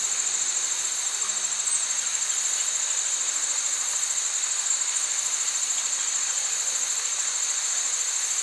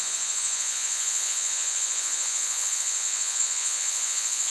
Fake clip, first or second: second